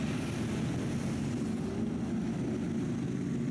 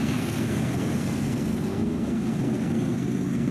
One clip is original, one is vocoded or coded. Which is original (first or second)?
first